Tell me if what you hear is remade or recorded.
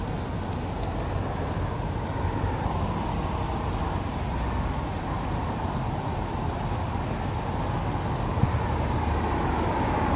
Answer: recorded